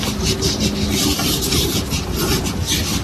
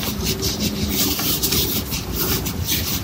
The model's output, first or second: second